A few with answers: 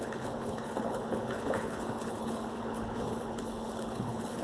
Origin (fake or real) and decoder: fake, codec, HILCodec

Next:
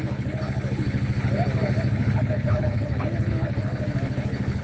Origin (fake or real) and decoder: fake, codec, HILCodec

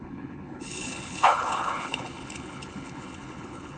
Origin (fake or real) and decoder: fake, codec, HILCodec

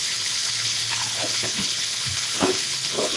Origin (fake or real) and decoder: fake, codec, HILCodec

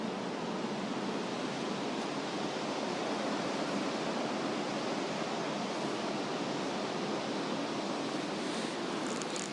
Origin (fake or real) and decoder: real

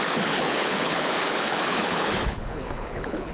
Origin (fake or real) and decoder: fake, codec, HILCodec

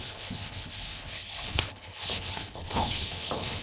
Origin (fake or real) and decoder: fake, codec, HILCodec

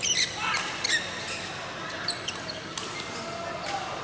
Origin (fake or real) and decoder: real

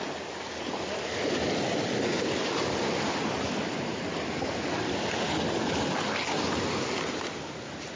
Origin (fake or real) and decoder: real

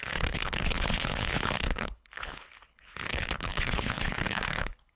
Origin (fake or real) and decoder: fake, codec, HILCodec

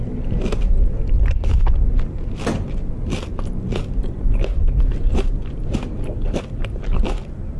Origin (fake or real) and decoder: real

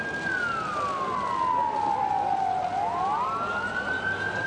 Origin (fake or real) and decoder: real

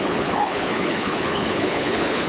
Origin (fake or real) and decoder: fake, codec, HILCodec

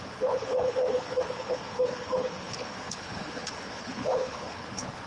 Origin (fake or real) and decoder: fake, codec, HILCodec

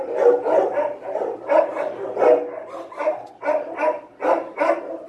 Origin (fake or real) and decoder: real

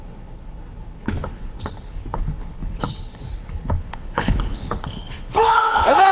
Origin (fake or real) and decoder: fake, codec, HILCodec